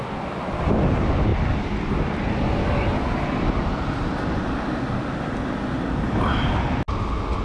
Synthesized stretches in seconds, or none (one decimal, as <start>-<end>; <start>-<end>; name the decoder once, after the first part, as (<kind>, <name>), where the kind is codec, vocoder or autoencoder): none